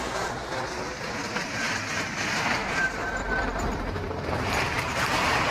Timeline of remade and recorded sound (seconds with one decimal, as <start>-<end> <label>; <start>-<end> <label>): 0.0-5.5 remade